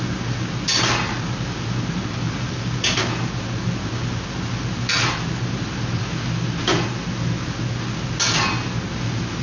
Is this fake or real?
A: real